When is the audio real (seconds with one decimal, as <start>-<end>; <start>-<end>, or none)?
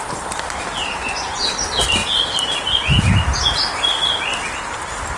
0.0-1.0; 1.5-5.2